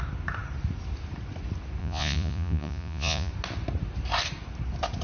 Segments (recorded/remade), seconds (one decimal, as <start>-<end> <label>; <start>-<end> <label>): 0.0-1.8 recorded; 1.8-3.3 remade; 3.3-5.0 recorded